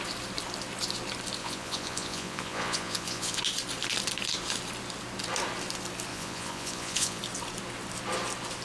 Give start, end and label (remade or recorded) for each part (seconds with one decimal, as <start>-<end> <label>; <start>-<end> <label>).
0.0-1.4 recorded; 1.4-3.4 remade; 3.4-6.1 recorded; 6.1-7.2 remade; 7.2-8.6 recorded